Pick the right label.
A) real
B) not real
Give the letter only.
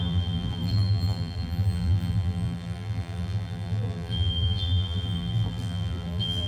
B